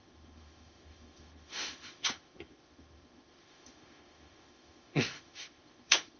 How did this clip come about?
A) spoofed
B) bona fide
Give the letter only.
A